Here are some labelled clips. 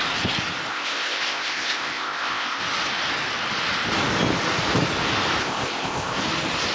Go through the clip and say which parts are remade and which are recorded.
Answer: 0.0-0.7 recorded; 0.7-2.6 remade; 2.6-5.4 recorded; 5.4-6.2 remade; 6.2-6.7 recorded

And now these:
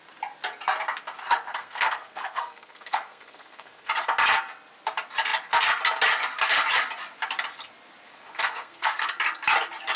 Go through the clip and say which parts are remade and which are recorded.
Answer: 0.0-1.5 recorded; 1.5-3.9 remade; 3.9-8.1 recorded; 8.1-9.1 remade; 9.1-10.0 recorded